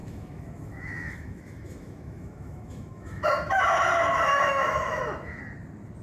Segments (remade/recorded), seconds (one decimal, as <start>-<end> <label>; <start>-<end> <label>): 0.0-3.6 remade; 3.6-4.3 recorded; 4.3-5.4 remade; 5.4-6.0 recorded